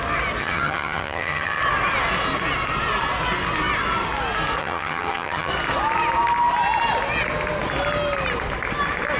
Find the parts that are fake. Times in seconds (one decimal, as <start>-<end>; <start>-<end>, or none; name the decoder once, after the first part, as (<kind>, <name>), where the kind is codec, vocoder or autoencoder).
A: 0.4-1.6 (vocoder, HiFi-GAN); 4.6-5.5